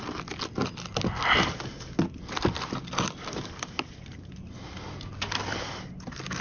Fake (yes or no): no